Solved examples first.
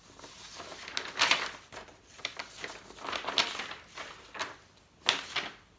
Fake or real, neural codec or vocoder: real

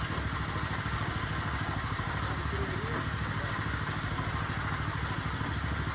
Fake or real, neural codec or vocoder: real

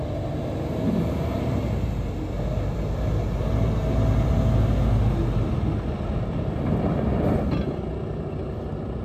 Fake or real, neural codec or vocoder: real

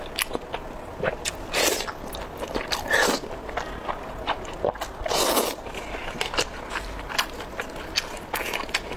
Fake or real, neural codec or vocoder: real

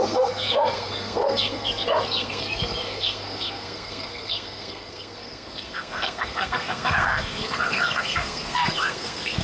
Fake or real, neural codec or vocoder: fake, codec, SNAC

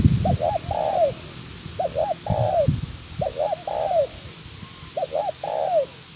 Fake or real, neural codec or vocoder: real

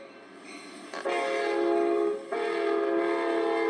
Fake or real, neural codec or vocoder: real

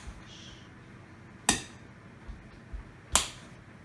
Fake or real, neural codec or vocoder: real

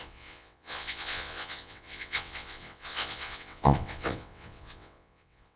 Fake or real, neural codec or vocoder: fake, vocoder, WaveNeXt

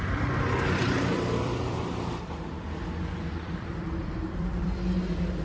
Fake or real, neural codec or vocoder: fake, vocoder, BigVGAN v2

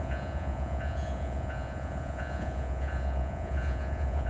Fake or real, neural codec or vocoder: fake, vocoder, Vocos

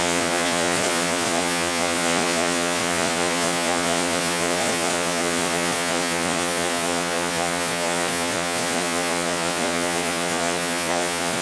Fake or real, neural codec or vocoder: fake, vocoder, Vocos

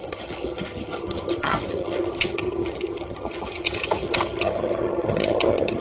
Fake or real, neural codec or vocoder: fake, vocoder, HiFi-GAN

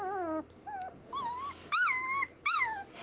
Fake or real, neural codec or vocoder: real